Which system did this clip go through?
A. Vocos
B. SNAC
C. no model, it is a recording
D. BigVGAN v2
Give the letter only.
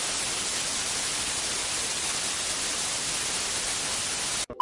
D